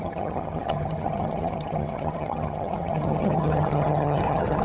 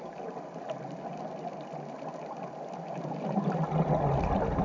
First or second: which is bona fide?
second